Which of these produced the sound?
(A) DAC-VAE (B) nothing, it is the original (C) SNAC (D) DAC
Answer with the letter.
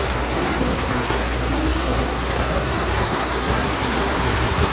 C